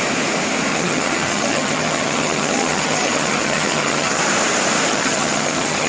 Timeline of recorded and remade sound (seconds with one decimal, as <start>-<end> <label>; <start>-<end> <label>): 0.0-0.7 recorded; 0.7-4.2 remade; 4.2-4.9 recorded; 4.9-5.9 remade